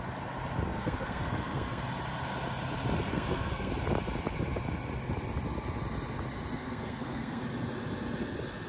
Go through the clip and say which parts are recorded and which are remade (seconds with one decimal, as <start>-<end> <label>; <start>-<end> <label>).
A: 0.0-0.7 recorded; 0.7-1.8 remade; 1.8-3.1 recorded; 3.1-3.7 remade; 3.7-6.6 recorded; 6.6-7.4 remade; 7.4-8.7 recorded